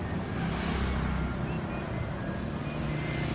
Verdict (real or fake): real